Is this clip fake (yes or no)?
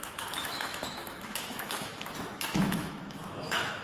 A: yes